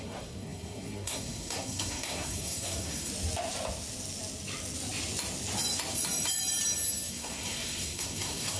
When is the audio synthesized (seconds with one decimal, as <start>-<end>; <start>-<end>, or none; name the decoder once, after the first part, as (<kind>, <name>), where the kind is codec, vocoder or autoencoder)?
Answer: 0.0-3.1 (codec, SNAC); 7.1-8.6